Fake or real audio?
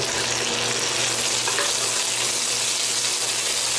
real